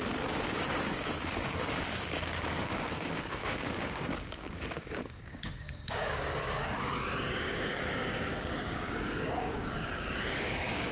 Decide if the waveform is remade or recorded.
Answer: remade